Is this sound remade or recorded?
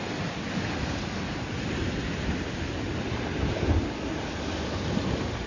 recorded